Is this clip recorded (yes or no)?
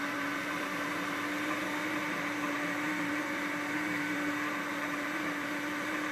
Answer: no